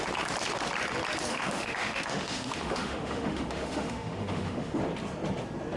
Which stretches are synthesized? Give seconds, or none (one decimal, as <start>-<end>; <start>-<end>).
1.3-4.8